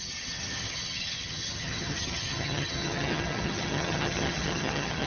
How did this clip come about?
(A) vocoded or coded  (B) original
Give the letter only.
A